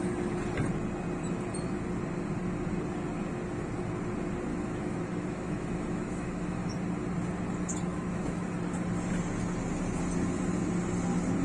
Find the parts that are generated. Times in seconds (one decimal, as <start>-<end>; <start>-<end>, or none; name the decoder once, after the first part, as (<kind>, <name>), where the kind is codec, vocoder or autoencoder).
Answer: 4.5-6.7 (autoencoder, DAC-VAE); 7.9-8.5